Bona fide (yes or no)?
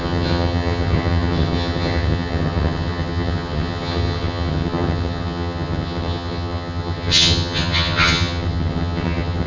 no